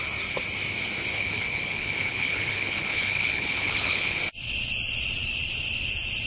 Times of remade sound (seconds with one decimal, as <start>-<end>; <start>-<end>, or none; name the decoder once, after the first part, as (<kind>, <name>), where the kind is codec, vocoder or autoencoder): 1.1-4.2 (codec, HILCodec)